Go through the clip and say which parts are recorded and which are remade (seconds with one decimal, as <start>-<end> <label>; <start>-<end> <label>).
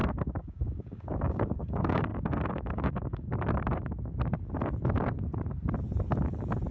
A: 0.0-3.3 remade; 3.3-6.7 recorded